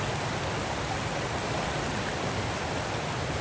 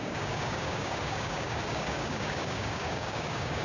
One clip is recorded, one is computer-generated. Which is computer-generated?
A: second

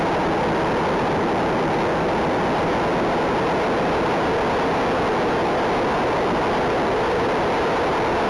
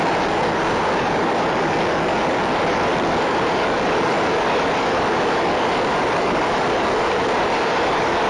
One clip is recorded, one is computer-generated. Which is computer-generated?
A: second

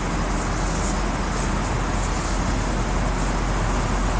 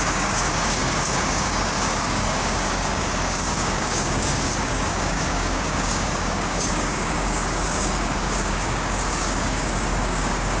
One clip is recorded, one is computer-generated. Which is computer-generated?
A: second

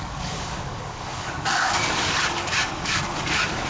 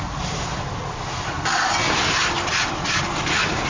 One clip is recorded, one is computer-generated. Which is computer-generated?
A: first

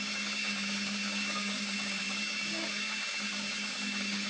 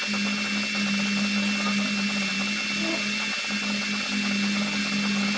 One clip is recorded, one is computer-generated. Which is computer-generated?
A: first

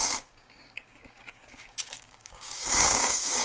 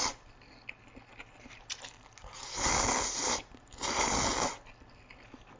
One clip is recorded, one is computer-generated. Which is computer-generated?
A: first